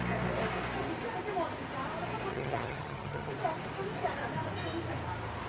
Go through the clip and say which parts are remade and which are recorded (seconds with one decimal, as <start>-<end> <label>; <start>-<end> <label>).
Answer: 0.0-2.3 recorded; 2.3-3.3 remade; 3.3-5.5 recorded